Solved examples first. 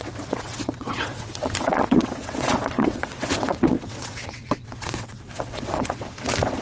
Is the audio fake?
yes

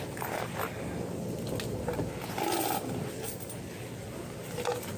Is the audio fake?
no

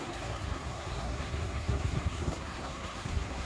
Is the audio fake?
yes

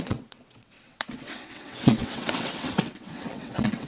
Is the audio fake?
yes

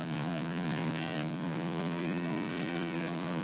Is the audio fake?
yes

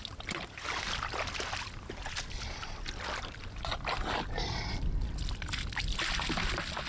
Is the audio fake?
no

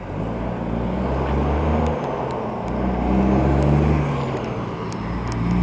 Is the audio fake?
no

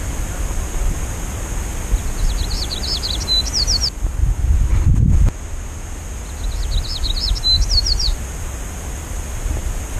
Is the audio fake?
no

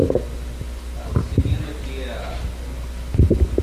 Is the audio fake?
no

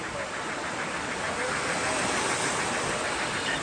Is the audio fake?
no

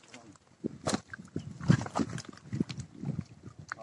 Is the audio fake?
no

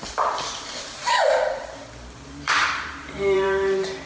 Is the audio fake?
yes